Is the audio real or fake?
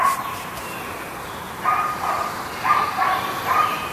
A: fake